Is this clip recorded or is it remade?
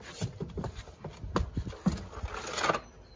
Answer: recorded